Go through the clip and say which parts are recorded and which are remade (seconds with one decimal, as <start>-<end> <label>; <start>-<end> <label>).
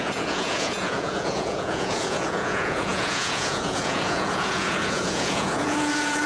0.0-6.3 remade